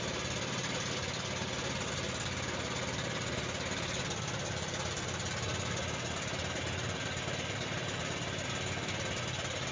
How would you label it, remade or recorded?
recorded